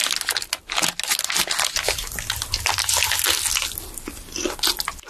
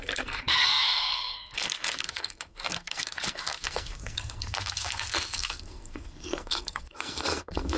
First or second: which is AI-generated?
second